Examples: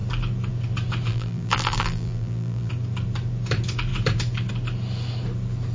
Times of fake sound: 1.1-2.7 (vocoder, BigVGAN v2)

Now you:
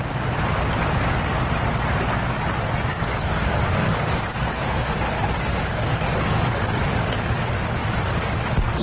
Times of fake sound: 2.9-5.0 (codec, DAC); 5.5-6.8

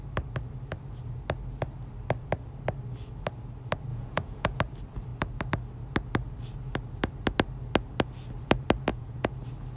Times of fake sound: 3.9-4.6 (vocoder, Vocos); 8.9-9.4

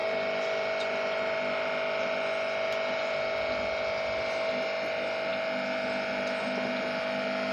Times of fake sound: none